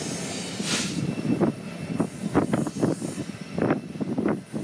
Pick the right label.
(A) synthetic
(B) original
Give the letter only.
A